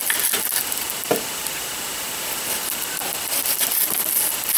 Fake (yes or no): no